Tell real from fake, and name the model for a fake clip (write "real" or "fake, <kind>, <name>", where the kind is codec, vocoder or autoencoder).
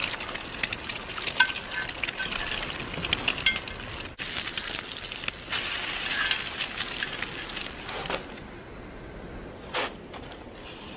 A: real